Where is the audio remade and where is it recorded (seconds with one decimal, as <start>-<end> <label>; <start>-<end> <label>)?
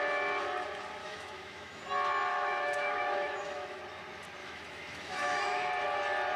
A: 0.0-1.0 recorded; 1.0-1.8 remade; 1.8-2.3 recorded; 2.3-3.8 remade; 3.8-4.4 recorded; 4.4-5.7 remade; 5.7-6.4 recorded